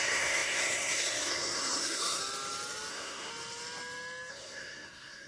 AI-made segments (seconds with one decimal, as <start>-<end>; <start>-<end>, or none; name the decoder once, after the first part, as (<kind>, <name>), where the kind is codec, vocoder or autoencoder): 0.0-2.2 (codec, SNAC); 2.9-3.3; 4.3-5.3